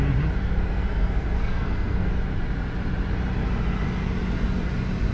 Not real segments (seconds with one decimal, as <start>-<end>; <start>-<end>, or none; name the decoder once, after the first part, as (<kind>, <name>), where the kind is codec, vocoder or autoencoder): 0.4-2.1 (codec, SNAC)